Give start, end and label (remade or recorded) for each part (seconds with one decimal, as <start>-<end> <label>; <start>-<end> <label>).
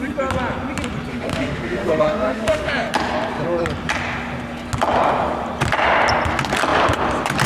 0.0-1.1 recorded; 1.1-2.7 remade; 2.7-7.5 recorded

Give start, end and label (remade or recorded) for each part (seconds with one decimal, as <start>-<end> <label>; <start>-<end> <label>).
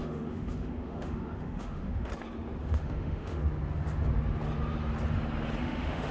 0.0-2.1 remade; 2.1-2.6 recorded; 2.6-3.4 remade; 3.4-5.6 recorded; 5.6-6.1 remade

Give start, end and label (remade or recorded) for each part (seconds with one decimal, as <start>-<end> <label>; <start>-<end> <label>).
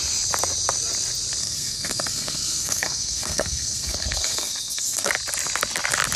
0.0-1.4 recorded; 1.4-5.1 remade; 5.1-6.2 recorded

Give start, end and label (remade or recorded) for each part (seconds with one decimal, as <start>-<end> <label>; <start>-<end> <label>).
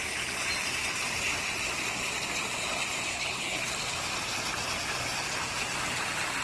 0.0-3.1 recorded; 3.1-3.7 remade; 3.7-6.4 recorded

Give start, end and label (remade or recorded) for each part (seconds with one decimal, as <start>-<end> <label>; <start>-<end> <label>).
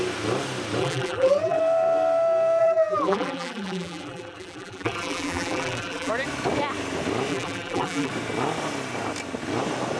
0.0-0.8 recorded; 0.8-1.6 remade; 1.6-2.6 recorded; 2.6-6.1 remade; 6.1-7.3 recorded; 7.3-8.1 remade; 8.1-10.0 recorded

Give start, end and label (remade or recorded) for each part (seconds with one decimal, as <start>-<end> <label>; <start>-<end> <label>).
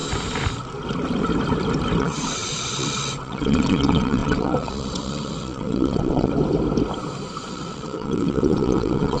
0.0-2.0 recorded; 2.0-6.3 remade; 6.3-7.5 recorded; 7.5-9.2 remade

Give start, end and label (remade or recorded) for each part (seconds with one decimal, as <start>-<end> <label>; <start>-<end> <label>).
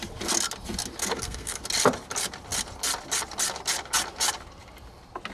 0.0-1.1 recorded; 1.1-1.6 remade; 1.6-5.3 recorded